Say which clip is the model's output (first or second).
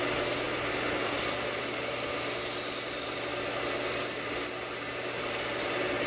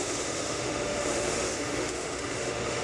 second